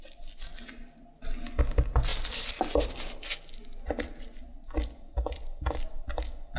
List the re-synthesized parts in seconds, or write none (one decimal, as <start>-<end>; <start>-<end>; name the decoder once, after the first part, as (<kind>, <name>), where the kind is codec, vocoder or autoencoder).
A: none

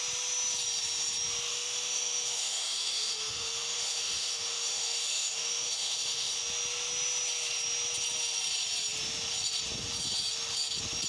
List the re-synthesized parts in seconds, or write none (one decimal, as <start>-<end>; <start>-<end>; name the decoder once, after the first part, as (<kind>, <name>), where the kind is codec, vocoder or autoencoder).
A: 1.5-6.4 (autoencoder, DAC-VAE)